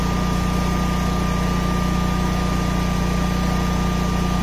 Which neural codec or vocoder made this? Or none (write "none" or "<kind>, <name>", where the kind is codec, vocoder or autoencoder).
none